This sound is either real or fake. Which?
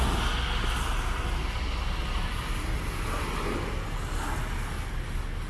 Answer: real